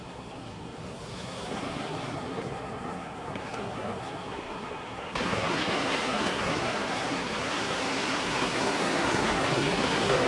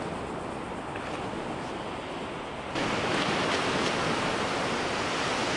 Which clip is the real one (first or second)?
second